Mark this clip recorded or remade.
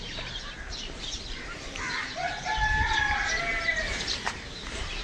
remade